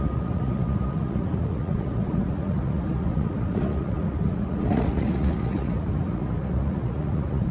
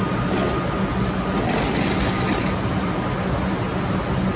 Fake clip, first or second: first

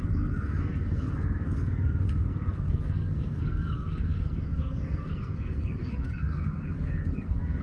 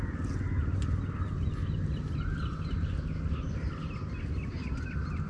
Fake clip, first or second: first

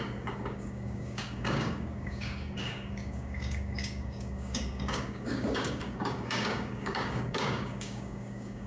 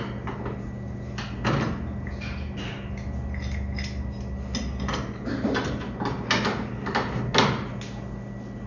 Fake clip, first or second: first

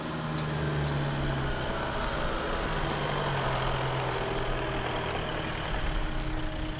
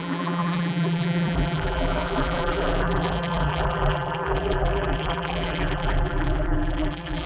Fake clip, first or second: second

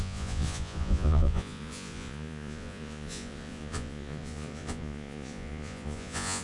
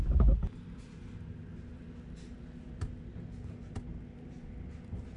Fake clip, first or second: first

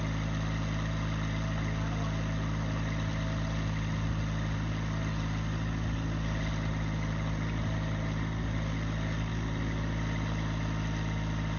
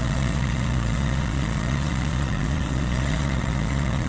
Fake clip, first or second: second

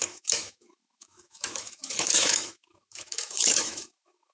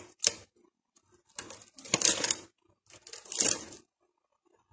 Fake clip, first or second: first